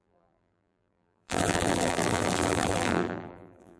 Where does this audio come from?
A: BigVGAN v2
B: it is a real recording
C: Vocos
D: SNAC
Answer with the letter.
A